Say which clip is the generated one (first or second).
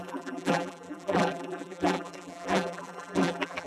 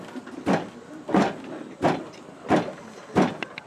first